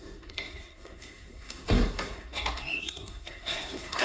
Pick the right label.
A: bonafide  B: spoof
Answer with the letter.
B